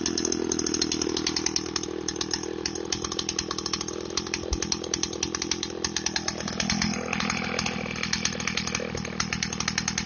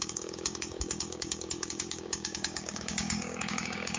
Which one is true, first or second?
first